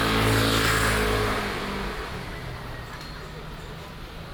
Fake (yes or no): no